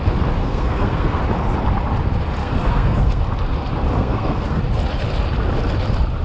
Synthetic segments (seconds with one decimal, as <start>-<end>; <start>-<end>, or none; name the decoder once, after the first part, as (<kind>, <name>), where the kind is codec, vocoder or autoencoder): 0.4-1.2 (codec, SNAC); 2.4-3.2; 4.0-4.6